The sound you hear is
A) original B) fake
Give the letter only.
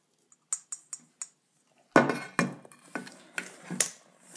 A